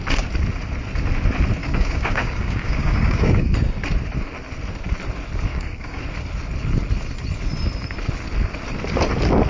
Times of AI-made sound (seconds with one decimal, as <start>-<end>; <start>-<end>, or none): 1.6-3.5; 5.5-6.0